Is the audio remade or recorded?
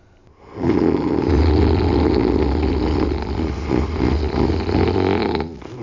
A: recorded